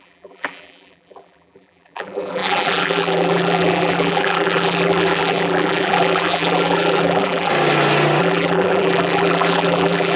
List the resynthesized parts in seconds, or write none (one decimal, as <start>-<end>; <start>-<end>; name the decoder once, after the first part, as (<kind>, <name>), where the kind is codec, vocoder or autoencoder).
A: 0.0-7.5 (vocoder, BigVGAN v2); 8.2-10.2